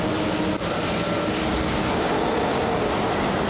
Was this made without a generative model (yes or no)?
yes